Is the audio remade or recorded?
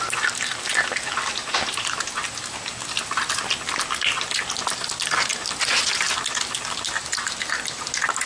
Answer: recorded